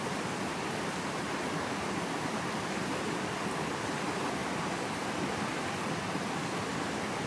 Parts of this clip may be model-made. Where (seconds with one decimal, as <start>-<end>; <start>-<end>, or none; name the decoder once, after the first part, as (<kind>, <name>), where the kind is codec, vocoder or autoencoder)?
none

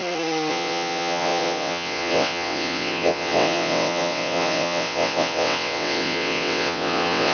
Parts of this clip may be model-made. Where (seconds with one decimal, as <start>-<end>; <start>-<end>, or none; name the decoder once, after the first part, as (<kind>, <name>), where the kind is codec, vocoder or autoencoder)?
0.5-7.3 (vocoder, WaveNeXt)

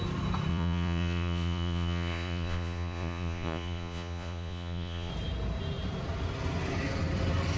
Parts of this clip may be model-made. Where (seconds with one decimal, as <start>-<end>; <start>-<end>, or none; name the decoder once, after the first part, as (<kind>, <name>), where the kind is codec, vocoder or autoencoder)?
0.5-5.1 (vocoder, Vocos)